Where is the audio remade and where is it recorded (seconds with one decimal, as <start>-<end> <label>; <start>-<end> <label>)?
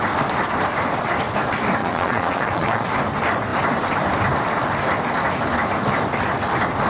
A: 0.0-1.8 recorded; 1.8-2.9 remade; 2.9-6.9 recorded